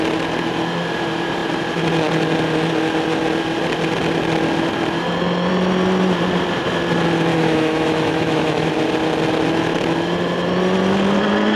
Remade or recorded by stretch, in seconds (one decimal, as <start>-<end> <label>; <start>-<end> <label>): 0.0-7.3 recorded; 7.3-8.7 remade; 8.7-11.6 recorded